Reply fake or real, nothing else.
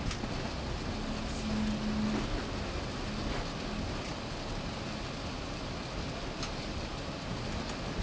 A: real